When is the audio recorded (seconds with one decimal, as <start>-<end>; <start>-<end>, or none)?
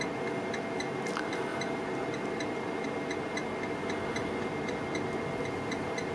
0.0-6.1